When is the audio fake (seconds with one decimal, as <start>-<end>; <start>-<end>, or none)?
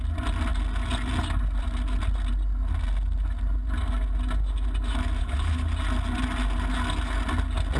5.2-5.7